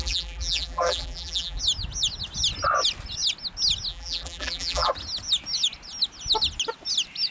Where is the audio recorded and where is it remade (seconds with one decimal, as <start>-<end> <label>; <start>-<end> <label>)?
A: 0.0-1.6 remade; 1.6-3.9 recorded; 3.9-4.9 remade; 4.9-7.3 recorded